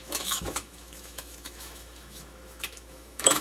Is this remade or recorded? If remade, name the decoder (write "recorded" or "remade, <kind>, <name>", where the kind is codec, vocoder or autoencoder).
remade, autoencoder, DAC-VAE